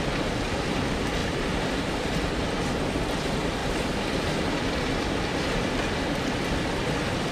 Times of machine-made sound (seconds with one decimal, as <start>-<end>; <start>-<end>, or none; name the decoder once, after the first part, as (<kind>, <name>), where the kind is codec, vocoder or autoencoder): 1.2-2.3 (vocoder, BigVGAN v2); 3.6-4.8